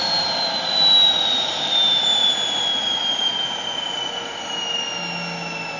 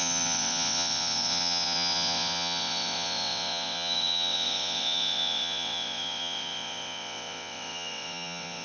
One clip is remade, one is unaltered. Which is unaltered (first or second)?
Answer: first